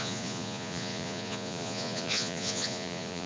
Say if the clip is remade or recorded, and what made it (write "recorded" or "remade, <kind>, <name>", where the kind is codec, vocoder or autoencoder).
remade, vocoder, Vocos